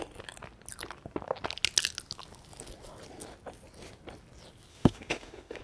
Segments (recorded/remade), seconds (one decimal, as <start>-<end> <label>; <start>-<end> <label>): 0.0-4.7 recorded; 4.7-5.6 remade